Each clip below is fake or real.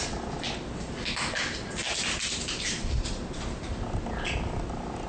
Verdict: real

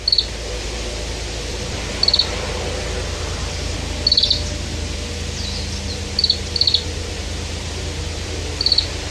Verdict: real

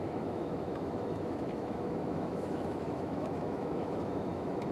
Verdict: fake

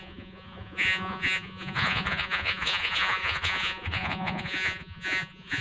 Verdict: fake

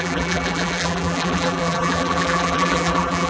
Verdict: fake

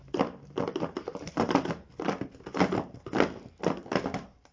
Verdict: real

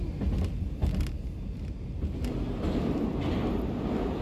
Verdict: real